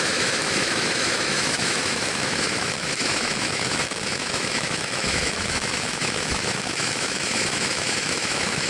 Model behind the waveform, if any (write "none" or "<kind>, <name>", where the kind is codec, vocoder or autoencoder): autoencoder, DAC-VAE